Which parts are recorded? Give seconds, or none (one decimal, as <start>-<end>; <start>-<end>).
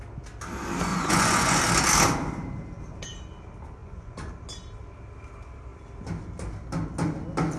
0.0-0.9; 1.6-3.8; 4.3-7.6